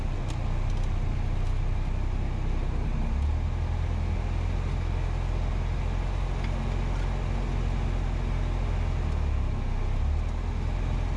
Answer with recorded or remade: recorded